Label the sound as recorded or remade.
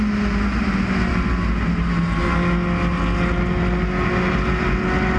recorded